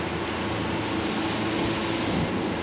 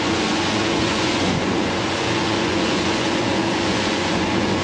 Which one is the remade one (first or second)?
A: second